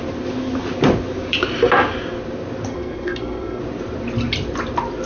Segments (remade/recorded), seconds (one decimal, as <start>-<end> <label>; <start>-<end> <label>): 0.0-2.7 recorded; 2.7-3.6 remade; 3.6-5.1 recorded